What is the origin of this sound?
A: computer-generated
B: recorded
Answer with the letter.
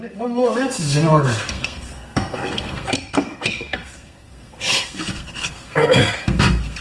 A